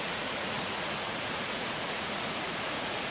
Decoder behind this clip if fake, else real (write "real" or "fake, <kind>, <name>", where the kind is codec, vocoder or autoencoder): fake, vocoder, Vocos